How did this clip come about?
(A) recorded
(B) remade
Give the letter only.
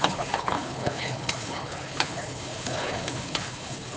B